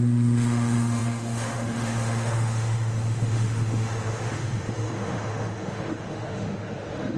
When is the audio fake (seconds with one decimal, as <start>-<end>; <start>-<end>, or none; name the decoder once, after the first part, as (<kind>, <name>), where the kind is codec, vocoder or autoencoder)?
0.0-7.2 (autoencoder, DAC-VAE)

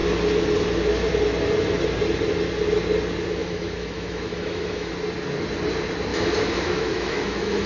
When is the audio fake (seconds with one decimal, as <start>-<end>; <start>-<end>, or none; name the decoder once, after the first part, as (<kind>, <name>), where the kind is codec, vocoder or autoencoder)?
3.4-4.9 (autoencoder, DAC-VAE); 6.1-7.7

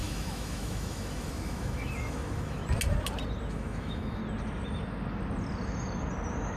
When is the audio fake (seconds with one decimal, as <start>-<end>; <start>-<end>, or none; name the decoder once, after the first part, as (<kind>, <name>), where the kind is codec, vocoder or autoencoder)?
0.0-2.6 (autoencoder, DAC-VAE); 3.5-4.2

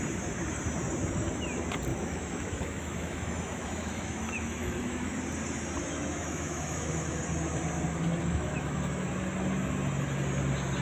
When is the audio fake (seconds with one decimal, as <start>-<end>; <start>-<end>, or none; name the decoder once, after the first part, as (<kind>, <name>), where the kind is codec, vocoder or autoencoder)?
1.9-5.2 (autoencoder, DAC-VAE); 5.8-7.2; 8.2-9.1

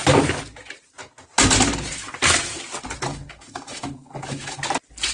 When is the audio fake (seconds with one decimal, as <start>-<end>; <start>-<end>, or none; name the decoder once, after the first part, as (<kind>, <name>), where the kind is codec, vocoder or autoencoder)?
3.1-4.6 (autoencoder, DAC-VAE)